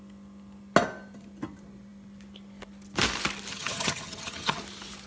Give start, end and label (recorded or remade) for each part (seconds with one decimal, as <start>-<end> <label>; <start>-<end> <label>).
0.0-3.5 recorded; 3.5-4.6 remade; 4.6-5.1 recorded